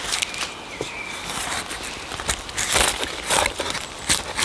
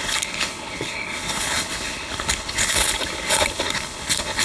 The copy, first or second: second